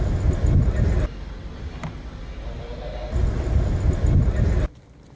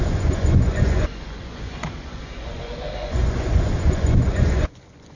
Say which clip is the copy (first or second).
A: second